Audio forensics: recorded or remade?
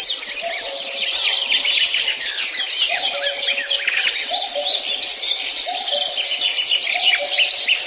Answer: recorded